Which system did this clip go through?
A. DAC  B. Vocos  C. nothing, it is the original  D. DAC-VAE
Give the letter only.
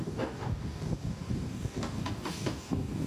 A